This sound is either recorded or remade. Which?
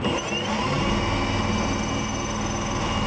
recorded